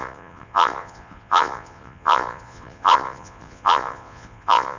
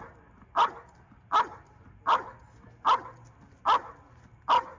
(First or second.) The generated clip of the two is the first